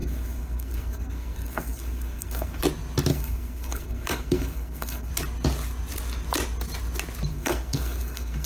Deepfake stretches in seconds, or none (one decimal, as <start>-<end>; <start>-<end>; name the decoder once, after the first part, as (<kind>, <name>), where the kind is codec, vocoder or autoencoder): 0.0-2.6 (codec, SNAC); 3.1-5.1; 7.3-8.5